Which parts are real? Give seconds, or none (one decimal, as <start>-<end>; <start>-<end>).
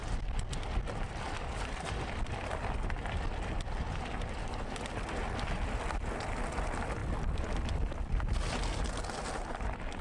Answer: 0.0-10.0